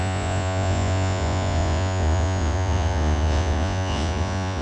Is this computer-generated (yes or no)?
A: yes